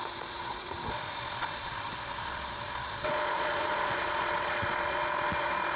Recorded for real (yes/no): no